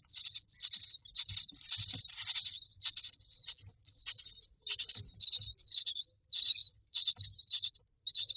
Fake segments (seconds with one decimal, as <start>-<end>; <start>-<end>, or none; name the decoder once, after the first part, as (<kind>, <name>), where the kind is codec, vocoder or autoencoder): 6.6-7.4 (vocoder, BigVGAN v2)

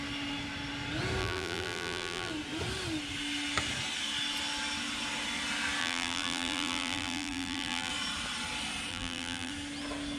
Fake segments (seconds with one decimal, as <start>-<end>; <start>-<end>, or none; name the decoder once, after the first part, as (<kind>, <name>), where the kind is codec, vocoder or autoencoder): 1.2-2.3 (vocoder, BigVGAN v2); 5.8-7.9; 8.9-9.5

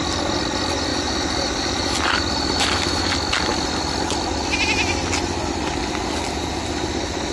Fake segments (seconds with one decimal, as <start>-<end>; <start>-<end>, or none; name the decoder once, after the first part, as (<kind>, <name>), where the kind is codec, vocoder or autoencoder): 0.9-3.1 (vocoder, BigVGAN v2)

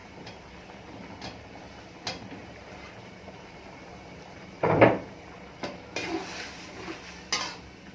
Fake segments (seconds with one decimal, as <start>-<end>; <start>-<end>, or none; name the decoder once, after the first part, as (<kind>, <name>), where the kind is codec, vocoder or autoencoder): 0.0-0.5 (vocoder, BigVGAN v2); 2.4-5.3

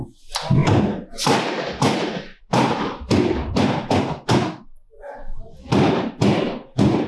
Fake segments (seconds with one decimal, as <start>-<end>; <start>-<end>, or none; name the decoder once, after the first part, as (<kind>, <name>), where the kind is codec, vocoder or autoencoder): none